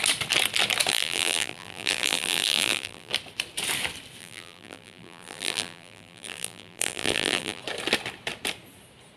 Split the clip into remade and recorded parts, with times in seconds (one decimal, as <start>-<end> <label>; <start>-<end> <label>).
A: 0.0-0.9 recorded; 0.9-3.1 remade; 3.1-4.2 recorded; 4.2-7.6 remade; 7.6-9.2 recorded